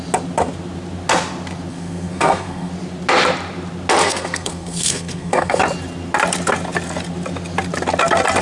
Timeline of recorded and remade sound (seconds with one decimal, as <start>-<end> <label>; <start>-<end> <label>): 0.0-1.7 recorded; 1.7-2.7 remade; 2.7-4.0 recorded; 4.0-5.6 remade; 5.6-8.4 recorded